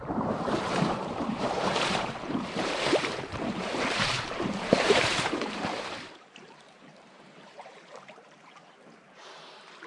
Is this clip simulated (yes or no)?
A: yes